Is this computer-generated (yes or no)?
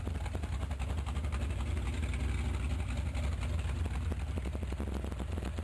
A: no